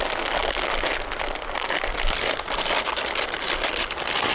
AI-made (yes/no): no